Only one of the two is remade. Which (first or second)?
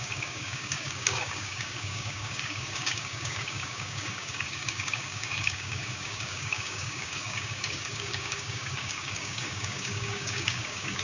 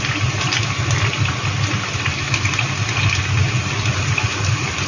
first